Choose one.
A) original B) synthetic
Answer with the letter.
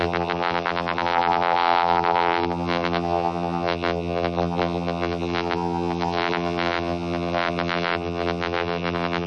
B